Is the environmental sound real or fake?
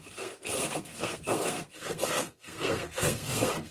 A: fake